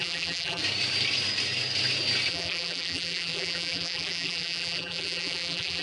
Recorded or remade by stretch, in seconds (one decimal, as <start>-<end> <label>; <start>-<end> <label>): 0.0-0.6 remade; 0.6-2.3 recorded; 2.3-5.8 remade